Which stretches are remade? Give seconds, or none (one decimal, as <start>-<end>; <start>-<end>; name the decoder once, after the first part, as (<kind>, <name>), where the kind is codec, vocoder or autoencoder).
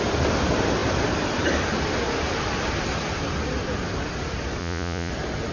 4.6-5.1 (vocoder, Vocos)